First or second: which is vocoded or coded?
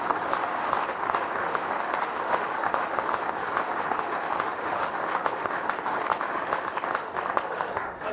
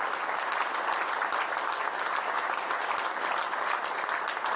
first